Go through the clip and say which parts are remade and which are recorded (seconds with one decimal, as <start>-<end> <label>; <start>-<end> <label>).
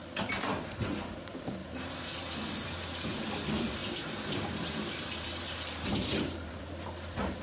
0.0-0.8 recorded; 0.8-7.4 remade